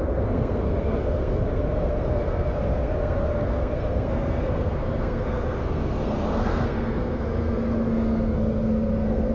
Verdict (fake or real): fake